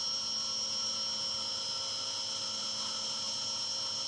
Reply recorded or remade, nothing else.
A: recorded